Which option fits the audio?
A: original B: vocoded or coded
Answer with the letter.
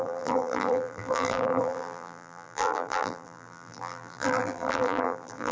B